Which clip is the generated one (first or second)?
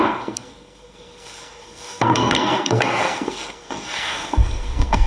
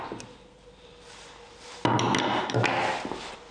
first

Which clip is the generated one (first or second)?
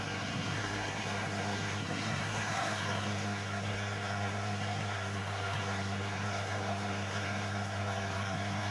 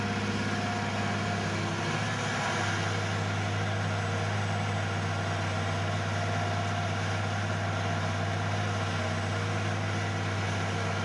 first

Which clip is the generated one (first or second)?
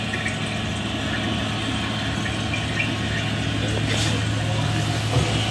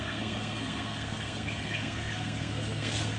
second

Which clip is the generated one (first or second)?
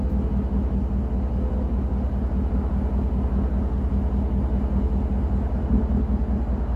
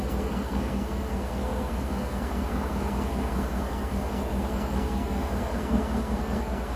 second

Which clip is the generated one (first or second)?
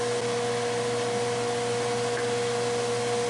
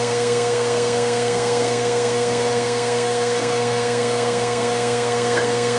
second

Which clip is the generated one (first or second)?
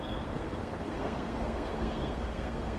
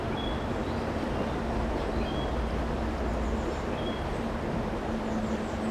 first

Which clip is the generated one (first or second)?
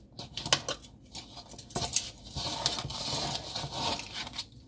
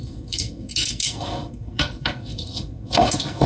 second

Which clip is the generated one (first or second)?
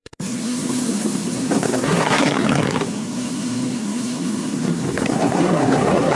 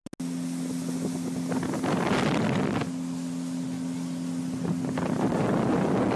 first